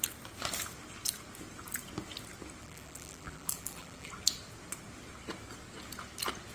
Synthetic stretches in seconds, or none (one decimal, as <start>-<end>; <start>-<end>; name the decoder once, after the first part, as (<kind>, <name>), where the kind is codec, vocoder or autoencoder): 2.6-4.1 (vocoder, BigVGAN v2)

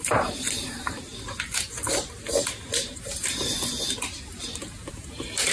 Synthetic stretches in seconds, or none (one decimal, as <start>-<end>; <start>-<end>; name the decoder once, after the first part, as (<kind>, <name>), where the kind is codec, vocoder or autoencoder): 0.0-1.1 (vocoder, BigVGAN v2); 2.4-3.6; 4.2-5.5

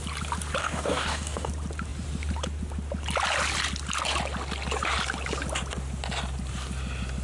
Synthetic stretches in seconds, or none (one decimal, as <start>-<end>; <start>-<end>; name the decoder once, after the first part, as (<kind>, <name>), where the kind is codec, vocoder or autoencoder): 0.6-1.5 (codec, DAC)

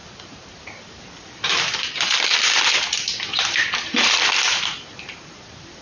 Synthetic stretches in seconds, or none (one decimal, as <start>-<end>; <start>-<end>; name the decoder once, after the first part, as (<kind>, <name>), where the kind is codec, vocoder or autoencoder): 0.0-5.8 (vocoder, BigVGAN v2)

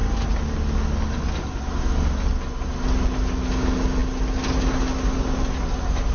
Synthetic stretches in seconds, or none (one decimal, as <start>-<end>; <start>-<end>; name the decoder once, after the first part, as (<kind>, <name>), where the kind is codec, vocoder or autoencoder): none

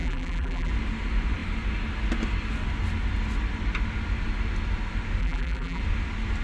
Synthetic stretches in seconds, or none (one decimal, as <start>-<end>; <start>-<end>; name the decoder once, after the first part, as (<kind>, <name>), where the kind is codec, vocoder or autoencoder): 0.0-0.7 (vocoder, BigVGAN v2); 5.2-5.8

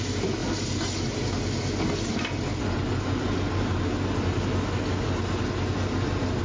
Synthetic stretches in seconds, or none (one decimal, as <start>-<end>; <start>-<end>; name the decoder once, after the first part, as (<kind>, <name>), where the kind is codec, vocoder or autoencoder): none

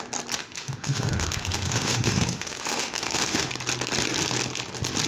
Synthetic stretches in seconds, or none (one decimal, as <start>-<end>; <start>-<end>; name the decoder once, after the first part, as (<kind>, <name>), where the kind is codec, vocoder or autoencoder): 0.4-3.5 (autoencoder, DAC-VAE)